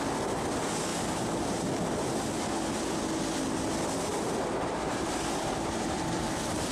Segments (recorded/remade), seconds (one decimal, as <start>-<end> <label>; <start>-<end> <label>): 0.0-0.9 recorded; 0.9-1.7 remade; 1.7-4.1 recorded; 4.1-6.7 remade